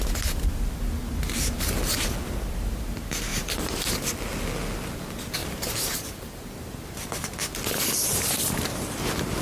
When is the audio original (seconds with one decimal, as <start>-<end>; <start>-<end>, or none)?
0.0-3.3; 3.9-5.4; 6.4-9.4